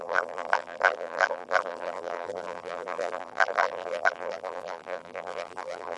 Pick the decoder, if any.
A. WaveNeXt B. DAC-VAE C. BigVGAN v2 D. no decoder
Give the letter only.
C